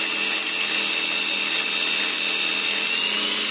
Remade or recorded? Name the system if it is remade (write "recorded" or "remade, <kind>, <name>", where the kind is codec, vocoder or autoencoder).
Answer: recorded